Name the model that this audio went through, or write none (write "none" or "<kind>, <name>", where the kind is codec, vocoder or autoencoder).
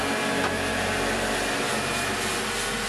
none